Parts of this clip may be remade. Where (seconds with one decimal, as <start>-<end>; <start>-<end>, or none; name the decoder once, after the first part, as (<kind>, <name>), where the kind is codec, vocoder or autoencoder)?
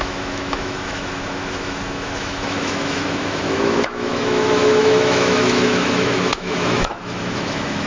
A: 0.0-7.9 (autoencoder, DAC-VAE)